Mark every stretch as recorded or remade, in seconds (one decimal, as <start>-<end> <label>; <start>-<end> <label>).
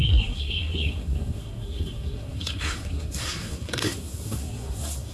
0.0-5.1 remade